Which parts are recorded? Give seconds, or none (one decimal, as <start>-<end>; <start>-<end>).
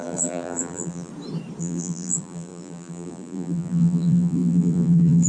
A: 1.1-1.6